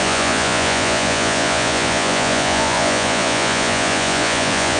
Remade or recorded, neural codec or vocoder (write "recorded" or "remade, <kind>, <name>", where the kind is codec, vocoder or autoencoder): remade, vocoder, Vocos